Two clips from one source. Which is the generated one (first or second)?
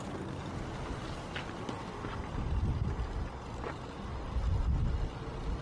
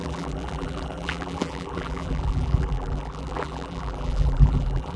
second